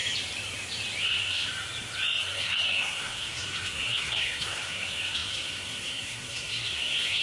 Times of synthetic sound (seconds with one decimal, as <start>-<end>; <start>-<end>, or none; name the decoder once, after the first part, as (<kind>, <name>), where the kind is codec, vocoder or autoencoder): 1.0-1.5 (codec, SNAC); 2.2-7.2